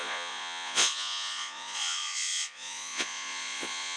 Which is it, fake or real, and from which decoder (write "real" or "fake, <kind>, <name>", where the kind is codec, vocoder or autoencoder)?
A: fake, vocoder, Vocos